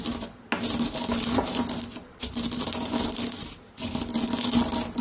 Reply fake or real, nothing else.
real